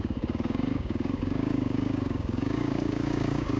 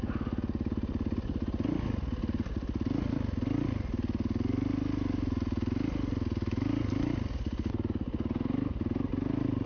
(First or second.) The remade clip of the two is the first